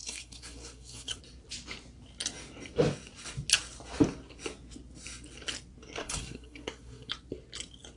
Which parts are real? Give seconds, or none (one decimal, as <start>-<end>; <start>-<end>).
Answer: 1.2-6.0; 7.1-8.0

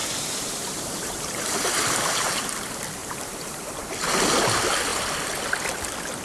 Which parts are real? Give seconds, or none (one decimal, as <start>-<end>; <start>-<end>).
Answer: 2.5-3.0; 3.7-6.2